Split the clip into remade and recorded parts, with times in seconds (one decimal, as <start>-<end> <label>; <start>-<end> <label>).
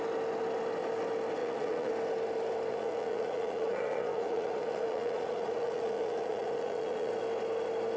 0.0-1.4 recorded; 1.4-1.9 remade; 1.9-2.7 recorded; 2.7-7.1 remade; 7.1-8.0 recorded